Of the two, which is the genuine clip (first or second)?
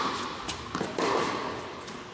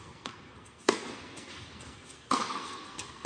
first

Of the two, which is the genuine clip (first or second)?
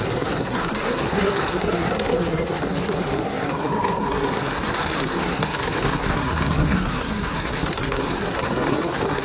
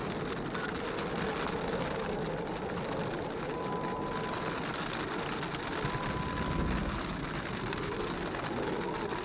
second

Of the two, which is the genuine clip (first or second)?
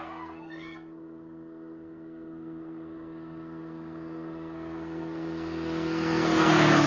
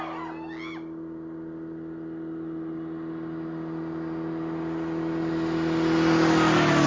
second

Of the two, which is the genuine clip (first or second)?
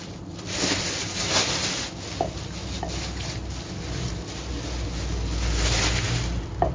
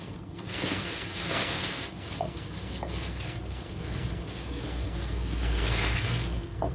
first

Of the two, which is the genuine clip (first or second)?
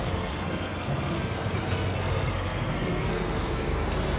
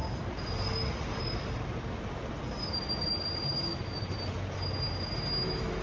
second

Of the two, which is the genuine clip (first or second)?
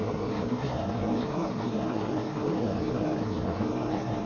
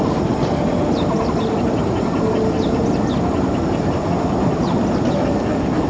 second